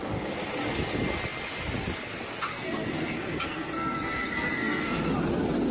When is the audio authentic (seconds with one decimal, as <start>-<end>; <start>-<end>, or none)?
0.0-2.5; 5.1-5.7